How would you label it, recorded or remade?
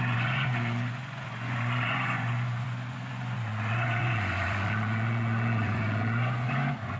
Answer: remade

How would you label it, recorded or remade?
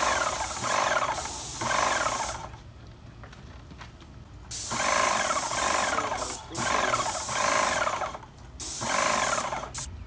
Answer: recorded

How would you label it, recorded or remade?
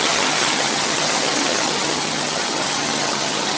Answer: remade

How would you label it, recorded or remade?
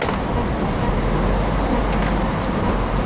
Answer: recorded